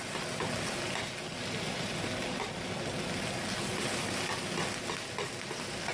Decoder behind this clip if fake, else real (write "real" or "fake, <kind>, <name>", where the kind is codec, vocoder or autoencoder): real